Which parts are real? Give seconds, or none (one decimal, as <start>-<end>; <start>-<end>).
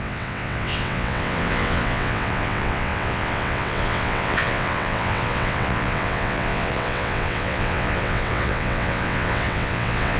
none